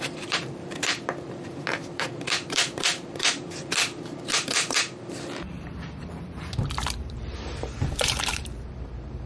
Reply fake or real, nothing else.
fake